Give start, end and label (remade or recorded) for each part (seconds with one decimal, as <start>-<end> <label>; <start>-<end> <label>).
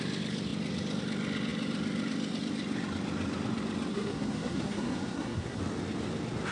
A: 0.0-3.9 recorded; 3.9-5.6 remade; 5.6-6.5 recorded